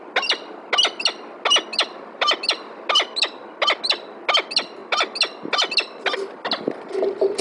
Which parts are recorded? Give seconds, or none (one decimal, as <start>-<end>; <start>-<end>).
0.0-7.4